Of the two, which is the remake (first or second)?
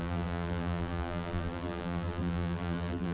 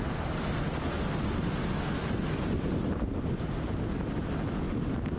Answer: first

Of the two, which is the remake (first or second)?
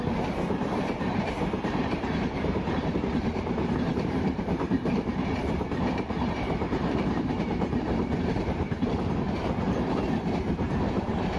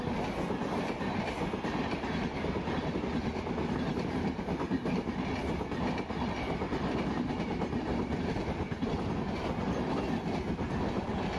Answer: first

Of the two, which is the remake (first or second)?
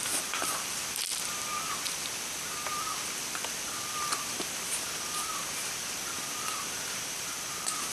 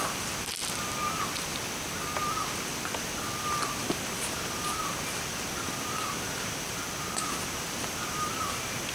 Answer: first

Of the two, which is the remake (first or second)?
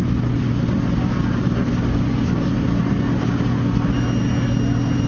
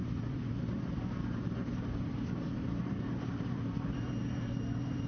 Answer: second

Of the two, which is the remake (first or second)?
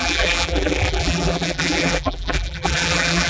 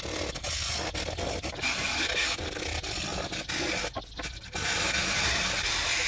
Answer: first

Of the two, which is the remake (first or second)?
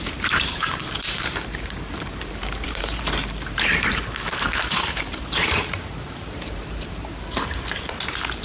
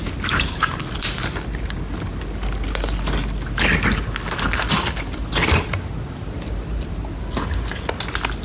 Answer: first